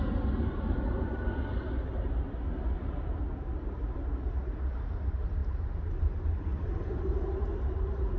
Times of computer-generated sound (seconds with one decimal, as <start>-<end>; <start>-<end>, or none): none